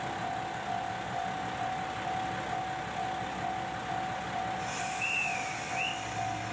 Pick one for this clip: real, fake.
real